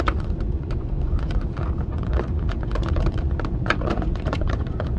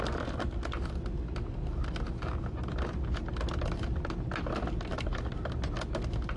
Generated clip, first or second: first